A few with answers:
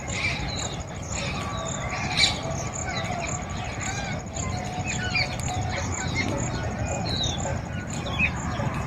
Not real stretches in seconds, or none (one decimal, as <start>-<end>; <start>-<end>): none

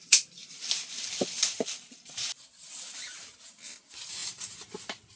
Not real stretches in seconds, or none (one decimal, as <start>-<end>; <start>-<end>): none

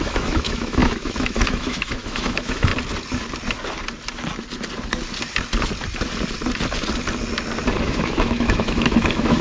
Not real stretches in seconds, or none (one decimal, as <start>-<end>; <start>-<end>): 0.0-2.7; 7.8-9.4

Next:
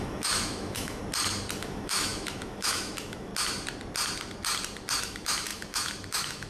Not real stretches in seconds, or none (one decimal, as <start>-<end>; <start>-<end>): 0.0-1.0; 1.6-3.3; 5.0-6.5

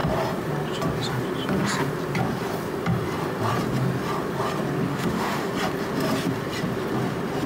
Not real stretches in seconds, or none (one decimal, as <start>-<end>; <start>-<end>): 4.9-5.5

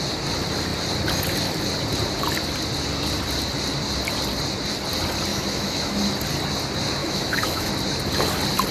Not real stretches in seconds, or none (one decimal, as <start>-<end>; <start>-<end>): 5.3-6.0; 7.0-7.7

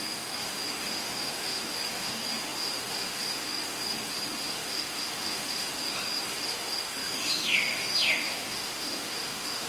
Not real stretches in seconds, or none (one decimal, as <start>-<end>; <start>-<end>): 0.0-9.7

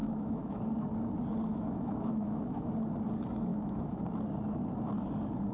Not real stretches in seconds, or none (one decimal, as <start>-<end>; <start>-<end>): 0.0-0.6; 1.5-2.7; 3.5-4.0